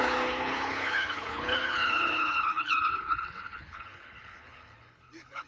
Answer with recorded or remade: remade